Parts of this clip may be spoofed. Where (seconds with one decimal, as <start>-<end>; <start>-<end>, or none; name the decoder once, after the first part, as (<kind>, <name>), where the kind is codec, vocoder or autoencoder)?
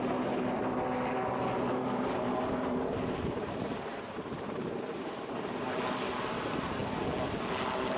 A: 1.8-5.4 (vocoder, BigVGAN v2)